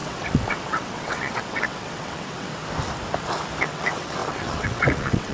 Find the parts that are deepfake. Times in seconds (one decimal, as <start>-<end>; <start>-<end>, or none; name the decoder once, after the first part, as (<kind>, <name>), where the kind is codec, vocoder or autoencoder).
0.0-2.5 (vocoder, WaveNeXt); 3.6-5.3